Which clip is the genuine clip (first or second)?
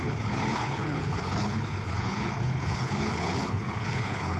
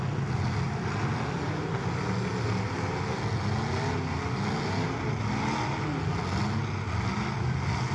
second